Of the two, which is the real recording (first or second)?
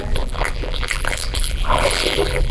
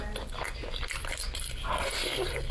second